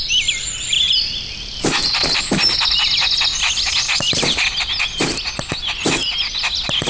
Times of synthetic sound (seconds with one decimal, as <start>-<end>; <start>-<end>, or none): none